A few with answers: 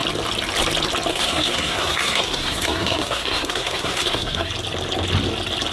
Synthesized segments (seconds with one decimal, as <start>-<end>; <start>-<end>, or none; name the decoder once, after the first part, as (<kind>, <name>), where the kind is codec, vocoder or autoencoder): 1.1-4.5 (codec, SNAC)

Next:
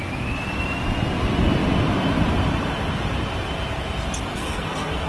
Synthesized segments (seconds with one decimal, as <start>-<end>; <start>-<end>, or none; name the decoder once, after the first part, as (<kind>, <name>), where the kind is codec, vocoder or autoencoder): 4.3-5.1 (codec, SNAC)

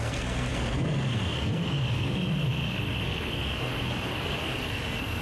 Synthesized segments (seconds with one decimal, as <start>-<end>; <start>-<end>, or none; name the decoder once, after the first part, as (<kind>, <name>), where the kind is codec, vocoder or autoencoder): 0.0-5.2 (codec, SNAC)

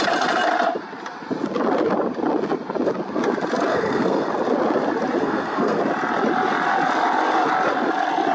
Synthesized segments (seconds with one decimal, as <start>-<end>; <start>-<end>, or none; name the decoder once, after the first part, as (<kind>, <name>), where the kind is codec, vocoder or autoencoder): 3.7-4.3 (codec, SNAC); 5.2-5.8

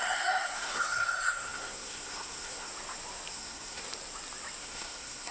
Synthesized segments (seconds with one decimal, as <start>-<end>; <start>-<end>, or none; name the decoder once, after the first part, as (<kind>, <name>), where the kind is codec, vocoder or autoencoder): 0.0-2.7 (codec, SNAC); 3.3-3.8; 4.6-5.3

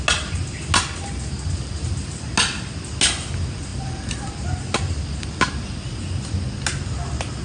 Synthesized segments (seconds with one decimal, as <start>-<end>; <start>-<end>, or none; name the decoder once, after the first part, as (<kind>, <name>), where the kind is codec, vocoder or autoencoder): none